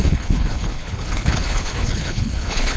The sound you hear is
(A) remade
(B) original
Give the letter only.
A